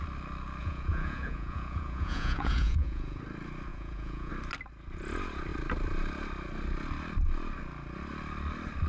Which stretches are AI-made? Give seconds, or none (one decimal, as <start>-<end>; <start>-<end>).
0.6-3.2; 3.7-4.3